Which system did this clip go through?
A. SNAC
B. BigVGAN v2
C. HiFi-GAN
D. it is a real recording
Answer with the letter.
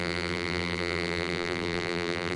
B